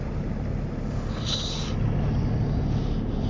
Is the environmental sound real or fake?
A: real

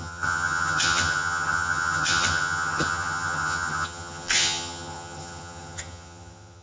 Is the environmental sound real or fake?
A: fake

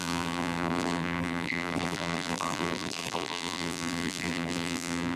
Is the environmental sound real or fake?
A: fake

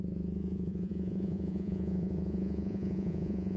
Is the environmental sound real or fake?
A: fake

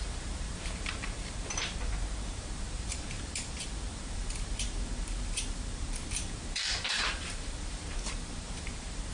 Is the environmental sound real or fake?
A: fake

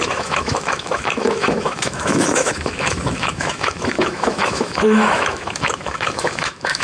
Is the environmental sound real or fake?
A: fake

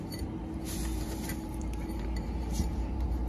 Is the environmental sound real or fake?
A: fake